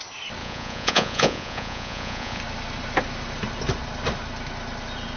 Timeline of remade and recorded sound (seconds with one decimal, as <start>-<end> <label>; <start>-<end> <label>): 0.0-0.4 recorded; 0.4-2.4 remade; 2.4-5.2 recorded